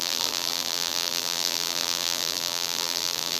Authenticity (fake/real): fake